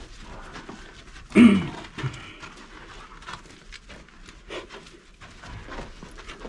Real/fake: real